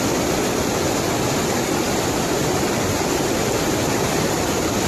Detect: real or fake real